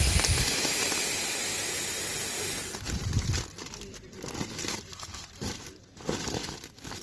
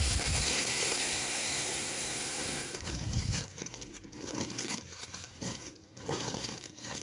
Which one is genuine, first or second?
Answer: first